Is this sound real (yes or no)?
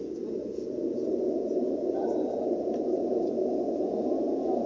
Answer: no